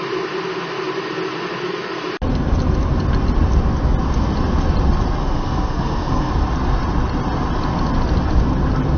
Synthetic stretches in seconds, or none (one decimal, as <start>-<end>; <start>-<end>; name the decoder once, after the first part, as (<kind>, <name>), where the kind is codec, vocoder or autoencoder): 5.2-6.3 (codec, SNAC)